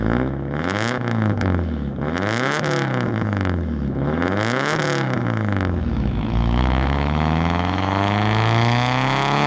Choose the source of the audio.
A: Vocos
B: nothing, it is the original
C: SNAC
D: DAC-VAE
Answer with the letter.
D